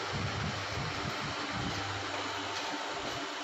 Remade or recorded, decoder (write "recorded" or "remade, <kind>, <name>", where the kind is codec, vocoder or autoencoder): recorded